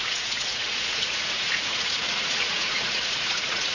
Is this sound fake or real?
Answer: fake